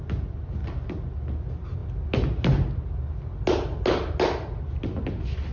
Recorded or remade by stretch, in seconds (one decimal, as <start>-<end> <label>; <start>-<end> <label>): 0.0-5.5 recorded